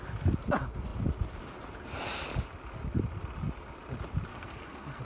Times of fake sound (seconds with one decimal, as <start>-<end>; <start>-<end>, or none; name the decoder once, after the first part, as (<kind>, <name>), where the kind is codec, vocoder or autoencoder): 4.3-5.0 (codec, SNAC)